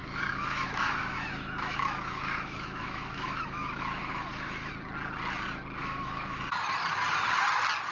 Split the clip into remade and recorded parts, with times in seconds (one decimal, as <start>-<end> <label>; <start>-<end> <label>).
0.0-4.7 remade; 4.7-5.8 recorded; 5.8-6.4 remade; 6.4-7.9 recorded